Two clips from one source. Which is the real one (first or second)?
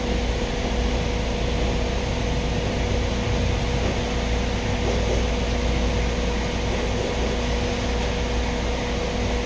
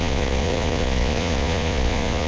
first